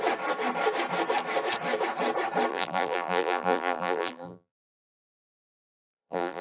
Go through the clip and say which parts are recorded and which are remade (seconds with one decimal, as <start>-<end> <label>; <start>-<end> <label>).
0.0-2.5 recorded; 2.5-6.4 remade